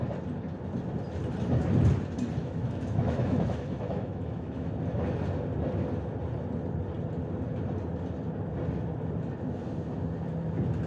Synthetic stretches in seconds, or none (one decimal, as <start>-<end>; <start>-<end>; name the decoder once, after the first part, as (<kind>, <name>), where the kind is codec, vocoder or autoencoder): 2.4-4.7 (autoencoder, DAC-VAE)